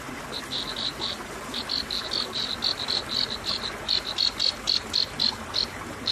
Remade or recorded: recorded